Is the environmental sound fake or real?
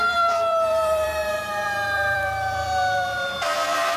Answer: fake